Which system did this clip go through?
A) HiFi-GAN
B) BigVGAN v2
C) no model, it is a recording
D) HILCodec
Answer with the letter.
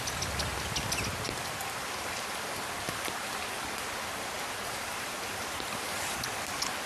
C